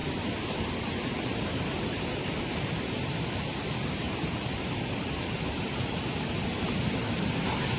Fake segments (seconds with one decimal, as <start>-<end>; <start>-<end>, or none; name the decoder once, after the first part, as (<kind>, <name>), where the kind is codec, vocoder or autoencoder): 0.8-7.8 (vocoder, BigVGAN v2)